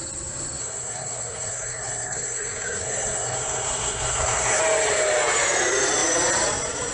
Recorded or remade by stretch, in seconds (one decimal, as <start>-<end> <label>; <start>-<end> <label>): 0.0-0.6 recorded; 0.6-4.6 remade; 4.6-6.9 recorded

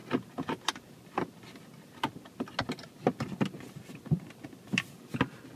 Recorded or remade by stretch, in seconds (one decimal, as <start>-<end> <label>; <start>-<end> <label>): 0.0-5.6 recorded

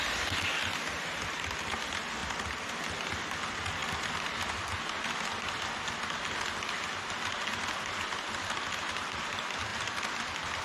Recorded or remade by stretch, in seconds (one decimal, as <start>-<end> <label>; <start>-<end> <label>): 0.0-10.6 recorded

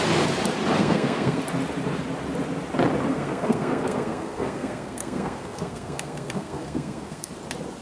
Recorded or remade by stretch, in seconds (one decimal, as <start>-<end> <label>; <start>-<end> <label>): 0.0-0.8 recorded; 0.8-1.4 remade; 1.4-3.1 recorded; 3.1-7.3 remade; 7.3-7.8 recorded

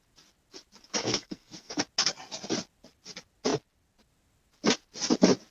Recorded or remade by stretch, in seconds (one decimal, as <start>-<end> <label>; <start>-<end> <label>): 0.0-1.0 recorded; 1.0-1.8 remade; 1.8-5.5 recorded

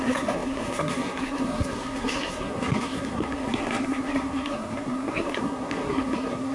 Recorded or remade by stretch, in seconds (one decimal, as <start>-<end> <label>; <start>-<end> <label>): 0.0-6.5 remade

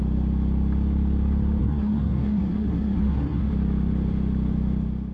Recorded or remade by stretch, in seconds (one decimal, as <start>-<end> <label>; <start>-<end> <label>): 0.0-1.6 recorded; 1.6-3.5 remade; 3.5-5.1 recorded

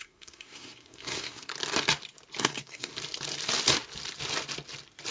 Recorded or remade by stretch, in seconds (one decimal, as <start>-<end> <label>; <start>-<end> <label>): 0.0-1.5 remade; 1.5-2.4 recorded; 2.4-2.9 remade; 2.9-5.1 recorded